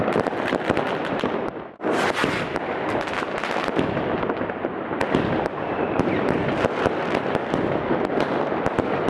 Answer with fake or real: real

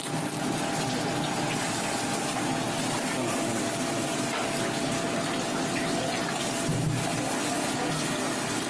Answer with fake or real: real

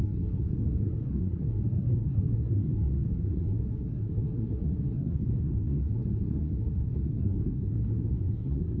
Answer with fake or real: fake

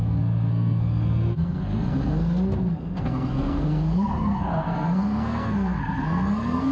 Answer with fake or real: fake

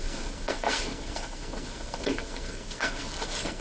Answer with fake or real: fake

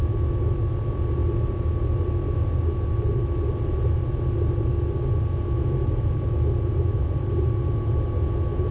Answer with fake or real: real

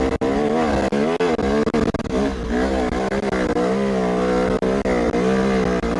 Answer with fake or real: real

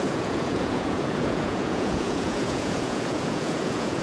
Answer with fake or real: fake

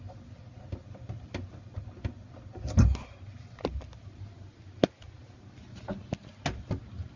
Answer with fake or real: real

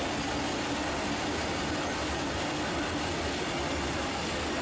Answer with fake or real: real